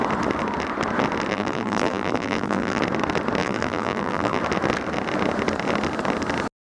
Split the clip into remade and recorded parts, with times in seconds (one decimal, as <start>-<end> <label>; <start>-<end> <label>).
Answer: 0.0-1.3 recorded; 1.3-2.8 remade; 2.8-3.4 recorded; 3.4-4.4 remade; 4.4-6.6 recorded

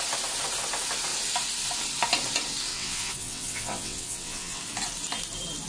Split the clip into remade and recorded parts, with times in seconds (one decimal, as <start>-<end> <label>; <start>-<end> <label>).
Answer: 0.0-2.7 recorded; 2.7-4.6 remade; 4.6-5.7 recorded

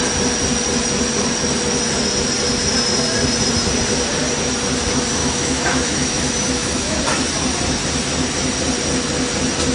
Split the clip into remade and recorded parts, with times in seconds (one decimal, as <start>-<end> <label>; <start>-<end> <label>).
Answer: 0.0-5.2 recorded; 5.2-7.0 remade; 7.0-9.7 recorded

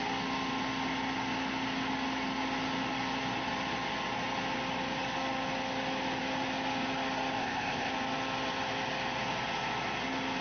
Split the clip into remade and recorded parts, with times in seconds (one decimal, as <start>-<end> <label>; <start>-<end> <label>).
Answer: 0.0-7.4 recorded; 7.4-7.9 remade; 7.9-10.4 recorded

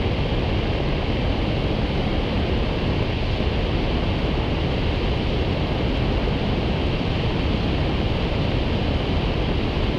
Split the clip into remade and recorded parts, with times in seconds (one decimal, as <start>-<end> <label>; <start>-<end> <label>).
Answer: 0.0-10.0 recorded

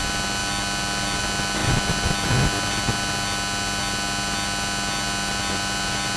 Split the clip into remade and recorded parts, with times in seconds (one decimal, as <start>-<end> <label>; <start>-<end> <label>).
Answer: 0.0-6.2 recorded

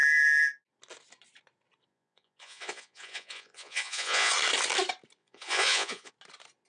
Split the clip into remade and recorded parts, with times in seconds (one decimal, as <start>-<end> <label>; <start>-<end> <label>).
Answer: 0.0-1.9 recorded; 1.9-4.3 remade; 4.3-5.2 recorded; 5.2-6.1 remade; 6.1-6.7 recorded